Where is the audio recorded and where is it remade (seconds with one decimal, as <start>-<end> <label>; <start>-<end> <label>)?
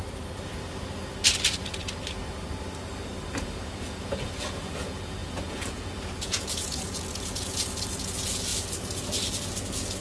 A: 0.0-3.4 recorded; 3.4-8.5 remade; 8.5-9.5 recorded; 9.5-10.0 remade